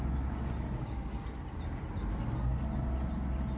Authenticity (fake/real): real